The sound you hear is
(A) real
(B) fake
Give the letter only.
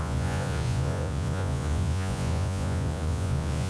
B